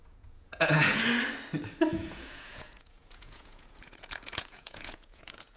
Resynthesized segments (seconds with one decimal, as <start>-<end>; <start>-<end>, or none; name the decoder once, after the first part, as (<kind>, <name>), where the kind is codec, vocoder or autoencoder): 0.0-1.0 (vocoder, Vocos); 1.9-5.6